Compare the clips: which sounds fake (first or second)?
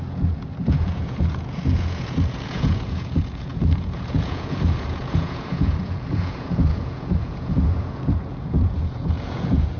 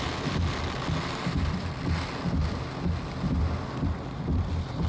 first